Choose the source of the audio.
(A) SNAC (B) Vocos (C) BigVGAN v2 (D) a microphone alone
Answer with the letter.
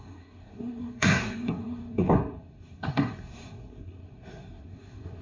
A